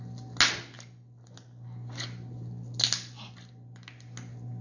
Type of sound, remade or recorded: recorded